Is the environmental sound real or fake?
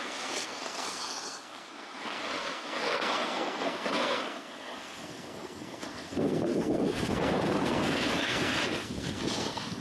fake